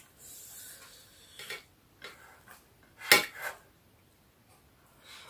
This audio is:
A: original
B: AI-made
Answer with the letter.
A